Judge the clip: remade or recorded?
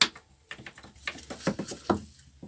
recorded